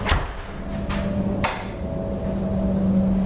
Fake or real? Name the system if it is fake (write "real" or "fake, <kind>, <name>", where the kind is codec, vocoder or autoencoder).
real